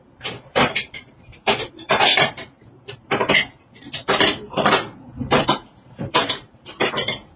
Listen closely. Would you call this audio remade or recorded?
remade